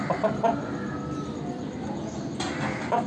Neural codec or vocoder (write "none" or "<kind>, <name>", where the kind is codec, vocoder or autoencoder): none